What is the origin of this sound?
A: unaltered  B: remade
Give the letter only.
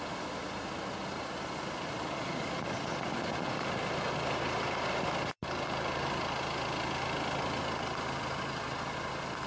A